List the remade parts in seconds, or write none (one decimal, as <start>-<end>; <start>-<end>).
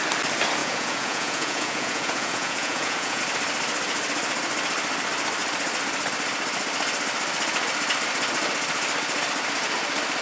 0.6-3.2